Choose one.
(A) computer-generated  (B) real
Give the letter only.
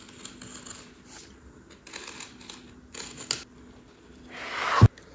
B